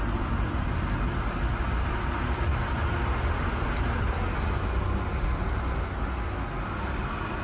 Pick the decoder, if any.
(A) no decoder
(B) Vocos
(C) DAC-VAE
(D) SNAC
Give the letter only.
A